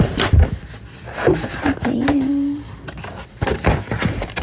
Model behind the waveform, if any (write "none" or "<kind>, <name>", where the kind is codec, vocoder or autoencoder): vocoder, BigVGAN v2